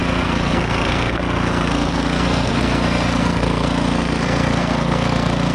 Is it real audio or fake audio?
fake